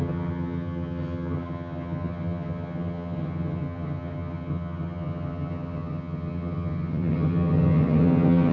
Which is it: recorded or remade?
remade